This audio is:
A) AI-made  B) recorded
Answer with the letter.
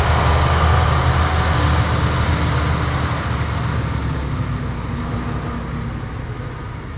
B